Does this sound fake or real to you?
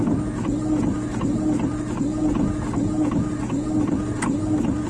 real